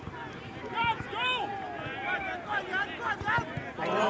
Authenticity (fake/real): real